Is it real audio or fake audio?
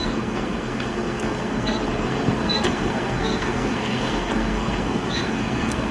fake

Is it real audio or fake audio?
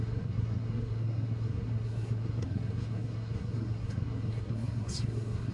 fake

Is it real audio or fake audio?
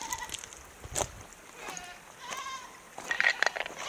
real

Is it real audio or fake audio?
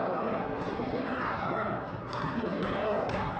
fake